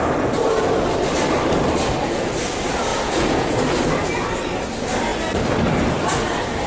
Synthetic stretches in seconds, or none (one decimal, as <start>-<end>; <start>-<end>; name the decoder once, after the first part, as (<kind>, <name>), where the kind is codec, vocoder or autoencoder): 2.9-3.6 (vocoder, Vocos)